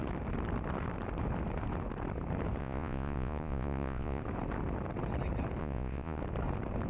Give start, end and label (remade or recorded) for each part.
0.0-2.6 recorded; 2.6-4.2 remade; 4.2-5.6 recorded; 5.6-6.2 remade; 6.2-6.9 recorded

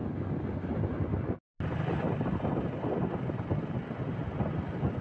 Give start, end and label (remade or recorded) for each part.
0.0-5.0 recorded

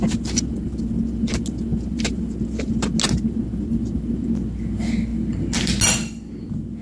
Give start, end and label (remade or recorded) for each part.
0.0-6.8 recorded

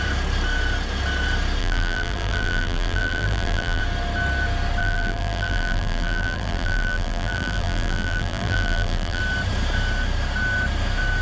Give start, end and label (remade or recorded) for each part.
0.0-1.6 recorded; 1.6-3.8 remade; 3.8-4.8 recorded; 4.8-9.2 remade; 9.2-11.2 recorded